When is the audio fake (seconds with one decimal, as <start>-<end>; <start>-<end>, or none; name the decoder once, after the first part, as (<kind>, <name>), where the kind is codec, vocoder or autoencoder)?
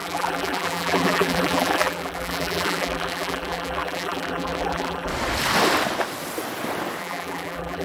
0.0-5.1 (vocoder, BigVGAN v2); 7.0-7.8